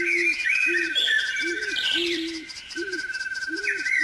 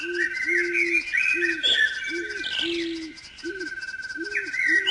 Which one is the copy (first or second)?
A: first